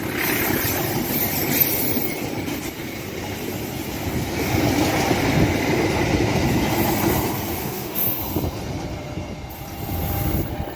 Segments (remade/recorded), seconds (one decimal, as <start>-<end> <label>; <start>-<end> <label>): 0.0-7.6 recorded; 7.6-8.2 remade; 8.2-10.8 recorded